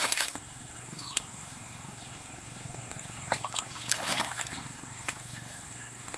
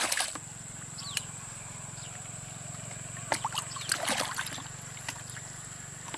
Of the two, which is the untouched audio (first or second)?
second